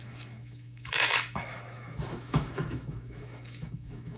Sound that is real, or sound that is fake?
fake